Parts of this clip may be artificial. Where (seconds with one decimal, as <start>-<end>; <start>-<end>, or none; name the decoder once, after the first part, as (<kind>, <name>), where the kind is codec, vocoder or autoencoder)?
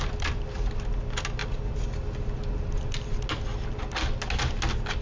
none